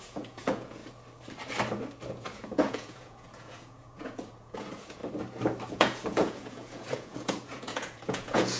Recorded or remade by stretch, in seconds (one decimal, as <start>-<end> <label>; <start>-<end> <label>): 0.0-0.8 remade; 0.8-2.1 recorded; 2.1-5.0 remade; 5.0-5.7 recorded; 5.7-8.6 remade

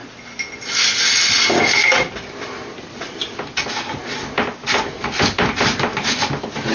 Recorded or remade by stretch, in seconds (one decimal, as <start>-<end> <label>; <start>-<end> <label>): 0.0-6.7 recorded

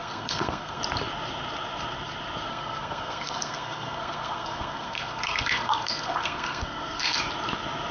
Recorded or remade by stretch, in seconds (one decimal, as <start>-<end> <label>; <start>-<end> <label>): 0.0-0.8 remade; 0.8-2.5 recorded; 2.5-7.2 remade; 7.2-7.9 recorded

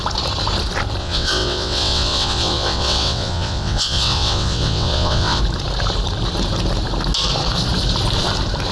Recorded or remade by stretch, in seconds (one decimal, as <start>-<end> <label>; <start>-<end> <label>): 0.0-1.0 recorded; 1.0-5.4 remade; 5.4-8.7 recorded